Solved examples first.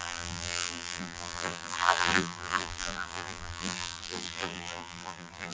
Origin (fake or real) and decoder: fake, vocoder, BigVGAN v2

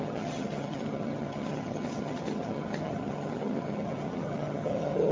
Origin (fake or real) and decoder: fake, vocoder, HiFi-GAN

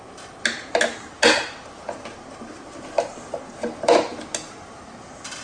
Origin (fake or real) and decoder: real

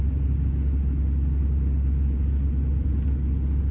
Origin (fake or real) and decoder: real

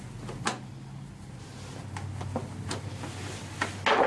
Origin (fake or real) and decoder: real